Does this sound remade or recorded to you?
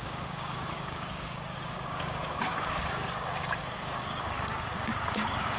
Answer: remade